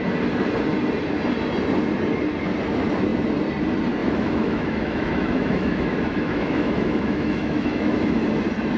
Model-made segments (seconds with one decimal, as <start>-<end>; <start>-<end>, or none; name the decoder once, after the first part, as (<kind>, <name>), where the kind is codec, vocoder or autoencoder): 4.0-8.2 (autoencoder, DAC-VAE)